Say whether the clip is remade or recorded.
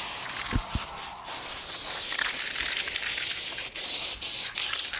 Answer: recorded